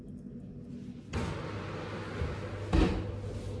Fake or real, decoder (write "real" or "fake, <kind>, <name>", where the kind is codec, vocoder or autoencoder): real